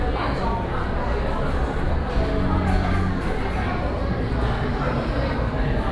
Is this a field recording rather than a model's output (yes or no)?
yes